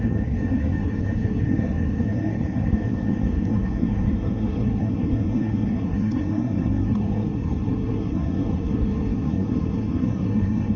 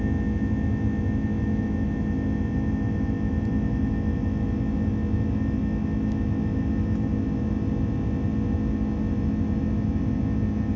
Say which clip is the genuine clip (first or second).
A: second